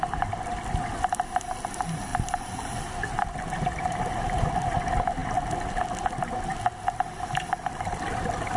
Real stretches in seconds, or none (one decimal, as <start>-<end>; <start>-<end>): 0.0-2.1; 4.5-8.6